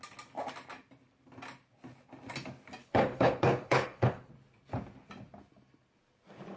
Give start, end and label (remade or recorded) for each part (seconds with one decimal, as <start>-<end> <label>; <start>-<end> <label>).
0.0-2.8 recorded; 2.8-4.3 remade; 4.3-6.6 recorded